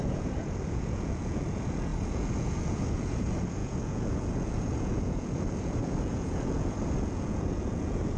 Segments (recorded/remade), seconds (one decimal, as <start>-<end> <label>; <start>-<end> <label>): 0.0-8.2 remade